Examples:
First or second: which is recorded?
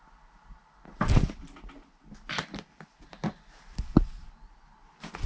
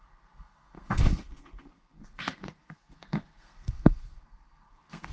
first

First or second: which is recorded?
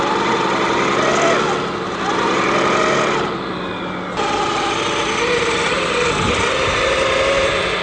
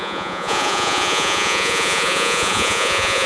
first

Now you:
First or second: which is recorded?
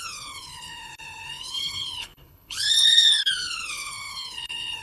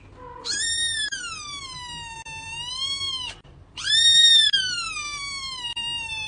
second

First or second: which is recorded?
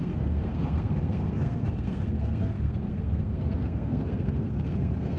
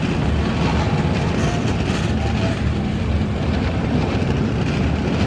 second